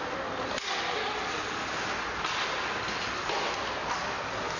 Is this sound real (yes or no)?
yes